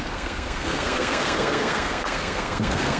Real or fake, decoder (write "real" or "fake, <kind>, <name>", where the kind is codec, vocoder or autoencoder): fake, codec, SNAC